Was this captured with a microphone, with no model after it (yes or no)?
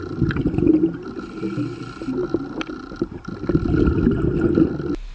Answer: yes